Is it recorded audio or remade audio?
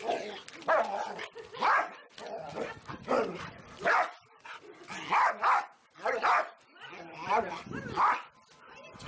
recorded